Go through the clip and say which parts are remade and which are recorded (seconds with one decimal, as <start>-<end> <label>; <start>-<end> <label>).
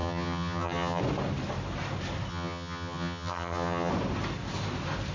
0.0-1.0 remade; 1.0-2.3 recorded; 2.3-3.9 remade; 3.9-5.1 recorded